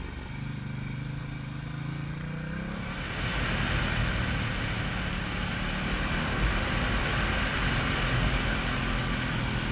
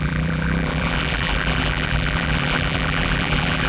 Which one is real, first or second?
first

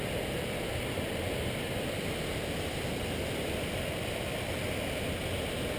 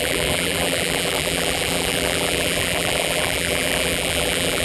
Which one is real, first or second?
first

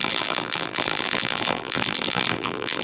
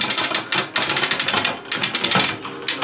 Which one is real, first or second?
second